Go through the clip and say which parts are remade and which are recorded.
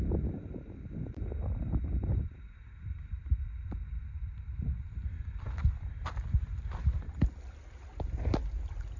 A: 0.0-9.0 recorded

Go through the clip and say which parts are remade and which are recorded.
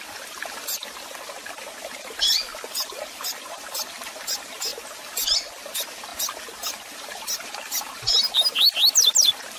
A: 0.0-9.6 recorded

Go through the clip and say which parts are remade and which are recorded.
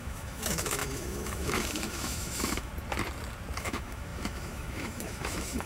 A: 0.0-2.7 remade; 2.7-3.6 recorded; 3.6-5.7 remade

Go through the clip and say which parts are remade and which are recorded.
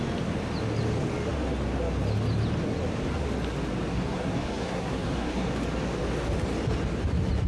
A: 0.0-3.9 recorded; 3.9-5.5 remade; 5.5-7.5 recorded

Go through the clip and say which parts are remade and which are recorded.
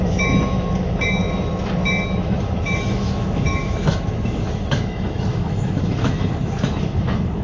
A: 0.0-7.4 remade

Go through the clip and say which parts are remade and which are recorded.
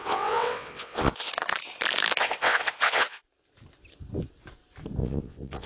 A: 0.0-1.3 remade; 1.3-2.2 recorded; 2.2-3.2 remade; 3.2-5.0 recorded; 5.0-5.7 remade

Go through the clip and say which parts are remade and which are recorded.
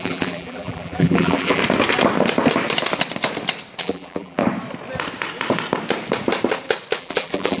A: 0.0-1.6 remade; 1.6-3.8 recorded; 3.8-4.4 remade; 4.4-7.0 recorded; 7.0-7.6 remade